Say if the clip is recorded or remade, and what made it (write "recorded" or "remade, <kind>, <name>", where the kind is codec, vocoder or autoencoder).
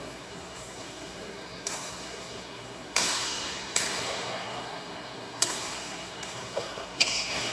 remade, codec, SNAC